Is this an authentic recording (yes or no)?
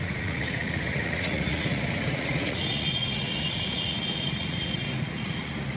no